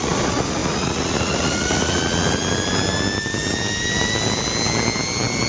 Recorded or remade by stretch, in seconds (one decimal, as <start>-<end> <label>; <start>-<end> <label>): 0.0-2.0 remade; 2.0-5.5 recorded